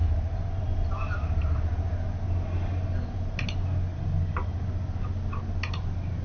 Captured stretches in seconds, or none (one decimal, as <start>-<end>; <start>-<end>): 0.0-6.2